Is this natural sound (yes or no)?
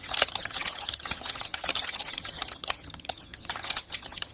no